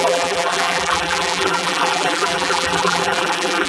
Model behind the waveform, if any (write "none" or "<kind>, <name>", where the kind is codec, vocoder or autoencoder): vocoder, BigVGAN v2